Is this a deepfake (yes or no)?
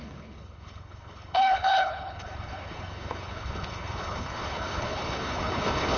yes